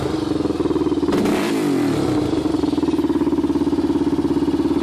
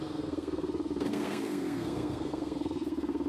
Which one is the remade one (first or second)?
second